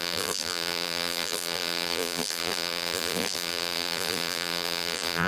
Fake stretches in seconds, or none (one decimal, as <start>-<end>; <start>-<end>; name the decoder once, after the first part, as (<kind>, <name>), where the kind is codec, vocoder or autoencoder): 0.0-5.3 (vocoder, BigVGAN v2)